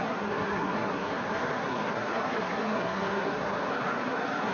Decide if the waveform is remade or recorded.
remade